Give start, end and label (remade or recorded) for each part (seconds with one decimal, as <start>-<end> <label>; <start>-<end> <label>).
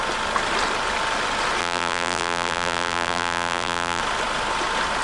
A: 0.0-1.6 recorded; 1.6-4.0 remade; 4.0-5.0 recorded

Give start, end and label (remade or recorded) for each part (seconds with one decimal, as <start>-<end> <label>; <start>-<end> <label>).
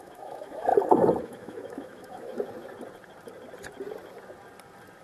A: 0.0-0.7 remade; 0.7-1.2 recorded; 1.2-2.3 remade; 2.3-5.0 recorded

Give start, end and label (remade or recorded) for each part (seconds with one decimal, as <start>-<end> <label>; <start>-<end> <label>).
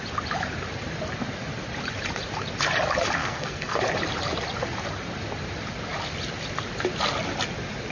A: 0.0-3.2 recorded; 3.2-3.8 remade; 3.8-7.9 recorded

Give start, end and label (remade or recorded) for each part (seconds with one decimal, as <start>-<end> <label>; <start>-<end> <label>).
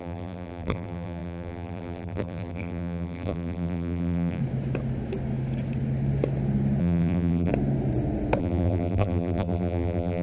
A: 0.0-4.4 remade; 4.4-6.8 recorded; 6.8-7.5 remade; 7.5-8.4 recorded; 8.4-10.2 remade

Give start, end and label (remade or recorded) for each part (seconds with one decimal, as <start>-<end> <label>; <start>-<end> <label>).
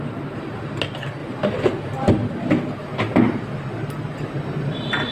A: 0.0-5.1 recorded